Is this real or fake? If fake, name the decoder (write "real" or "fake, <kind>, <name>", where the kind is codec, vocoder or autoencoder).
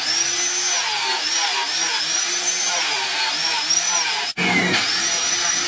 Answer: real